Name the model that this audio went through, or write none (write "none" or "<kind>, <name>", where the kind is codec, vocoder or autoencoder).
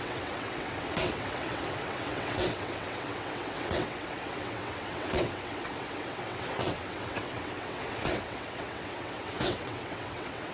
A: vocoder, WaveNeXt